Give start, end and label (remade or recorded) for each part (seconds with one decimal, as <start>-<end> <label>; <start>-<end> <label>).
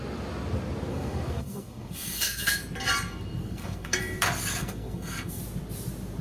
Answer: 0.0-0.9 recorded; 0.9-2.6 remade; 2.6-3.4 recorded; 3.4-4.0 remade; 4.0-4.6 recorded; 4.6-5.4 remade; 5.4-6.2 recorded